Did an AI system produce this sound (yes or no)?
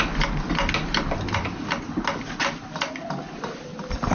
no